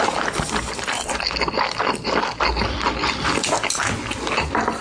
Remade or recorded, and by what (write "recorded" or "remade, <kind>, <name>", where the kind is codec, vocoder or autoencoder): recorded